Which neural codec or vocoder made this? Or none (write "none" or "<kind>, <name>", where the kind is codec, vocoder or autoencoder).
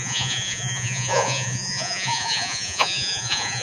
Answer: vocoder, Vocos